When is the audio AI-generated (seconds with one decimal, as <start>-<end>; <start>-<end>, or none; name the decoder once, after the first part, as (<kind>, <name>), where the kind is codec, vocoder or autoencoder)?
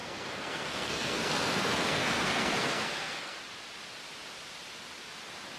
0.0-3.4 (codec, SNAC)